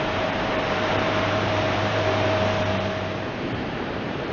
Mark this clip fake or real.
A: fake